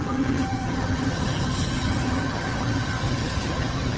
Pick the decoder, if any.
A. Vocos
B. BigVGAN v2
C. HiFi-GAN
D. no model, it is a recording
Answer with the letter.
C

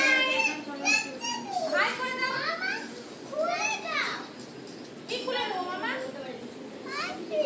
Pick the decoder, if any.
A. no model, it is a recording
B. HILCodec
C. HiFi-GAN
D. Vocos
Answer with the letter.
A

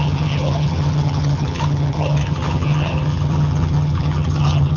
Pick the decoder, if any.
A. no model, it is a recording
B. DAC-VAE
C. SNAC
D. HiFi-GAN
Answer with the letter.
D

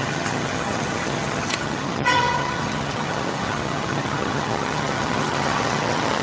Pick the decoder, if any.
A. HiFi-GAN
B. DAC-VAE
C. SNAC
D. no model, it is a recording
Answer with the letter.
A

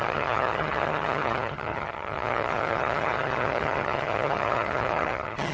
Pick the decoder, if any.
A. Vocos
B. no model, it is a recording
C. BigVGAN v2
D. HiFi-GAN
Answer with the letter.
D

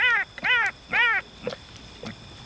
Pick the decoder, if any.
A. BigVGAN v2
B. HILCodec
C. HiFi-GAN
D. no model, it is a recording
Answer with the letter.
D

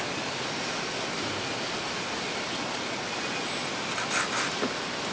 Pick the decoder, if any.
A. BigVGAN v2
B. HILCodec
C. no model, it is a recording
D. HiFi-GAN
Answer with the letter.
C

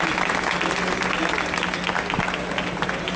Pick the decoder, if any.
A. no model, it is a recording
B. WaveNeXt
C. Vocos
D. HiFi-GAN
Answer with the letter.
A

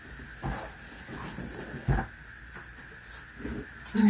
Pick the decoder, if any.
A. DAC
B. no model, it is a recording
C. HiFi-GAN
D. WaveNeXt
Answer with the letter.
B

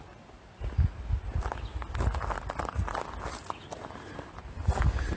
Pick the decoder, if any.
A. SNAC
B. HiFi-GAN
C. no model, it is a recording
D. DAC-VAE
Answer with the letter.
C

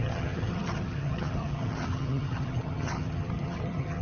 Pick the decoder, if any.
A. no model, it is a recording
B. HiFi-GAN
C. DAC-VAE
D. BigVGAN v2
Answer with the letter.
B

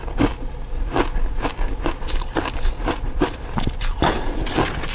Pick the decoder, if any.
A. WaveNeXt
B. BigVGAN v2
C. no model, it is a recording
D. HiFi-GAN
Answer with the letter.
C